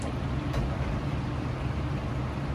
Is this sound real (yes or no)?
yes